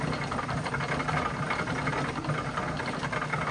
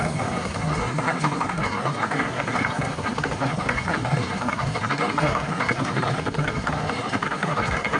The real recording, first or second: first